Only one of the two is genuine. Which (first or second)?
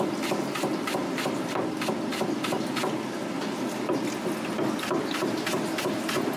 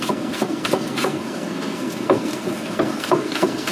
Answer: first